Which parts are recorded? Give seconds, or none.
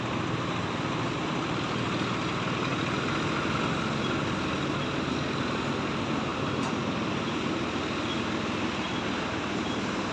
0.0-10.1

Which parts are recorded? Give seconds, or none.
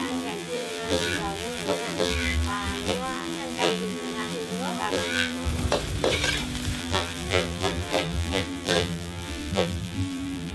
5.5-6.8